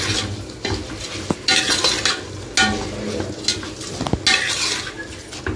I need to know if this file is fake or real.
real